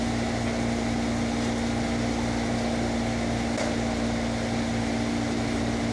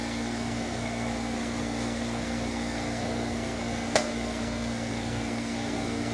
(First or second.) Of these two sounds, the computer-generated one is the second